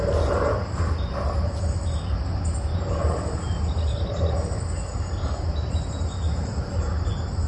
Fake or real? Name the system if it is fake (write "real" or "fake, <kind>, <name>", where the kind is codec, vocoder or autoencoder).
real